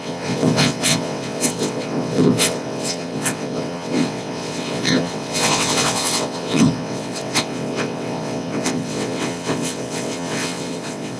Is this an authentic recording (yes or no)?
no